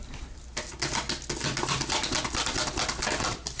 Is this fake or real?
real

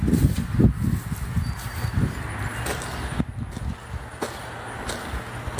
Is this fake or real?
real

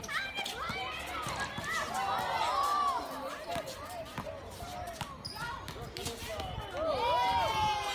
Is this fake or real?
real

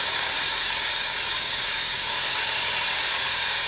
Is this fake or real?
fake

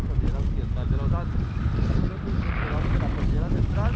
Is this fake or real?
real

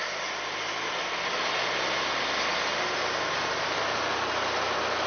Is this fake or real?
real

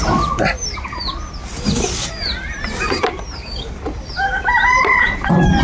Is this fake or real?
fake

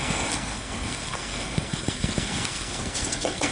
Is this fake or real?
fake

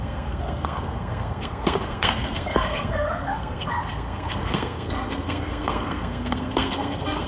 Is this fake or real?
fake